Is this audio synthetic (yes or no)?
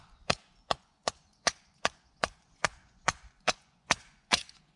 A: yes